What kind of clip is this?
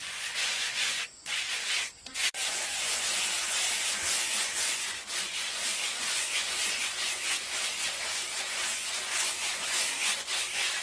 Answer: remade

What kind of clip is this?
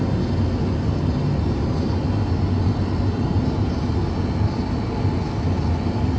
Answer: recorded